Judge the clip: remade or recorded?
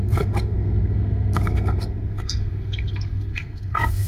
remade